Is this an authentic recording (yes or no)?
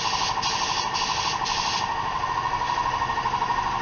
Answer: yes